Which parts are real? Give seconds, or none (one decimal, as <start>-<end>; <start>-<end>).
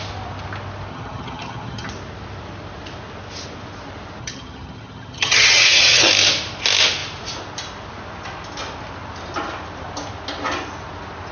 0.0-0.9; 1.9-4.2; 6.1-11.3